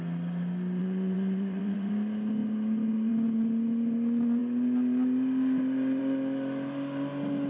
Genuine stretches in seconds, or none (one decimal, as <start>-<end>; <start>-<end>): 0.0-0.8; 1.9-7.5